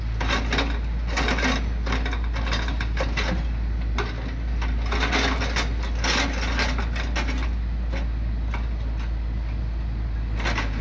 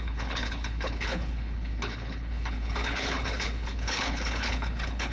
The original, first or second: first